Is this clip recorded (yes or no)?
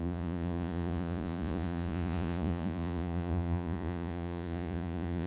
no